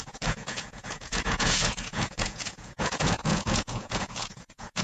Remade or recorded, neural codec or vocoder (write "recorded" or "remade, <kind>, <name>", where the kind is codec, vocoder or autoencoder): remade, vocoder, Vocos